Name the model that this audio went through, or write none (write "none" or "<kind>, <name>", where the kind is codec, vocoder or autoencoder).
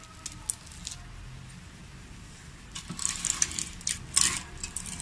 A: none